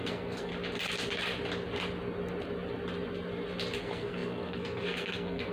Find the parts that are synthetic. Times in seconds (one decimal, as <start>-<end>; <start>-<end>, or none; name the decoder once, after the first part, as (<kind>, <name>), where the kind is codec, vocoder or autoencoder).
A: 0.0-0.5 (codec, SNAC); 3.8-5.5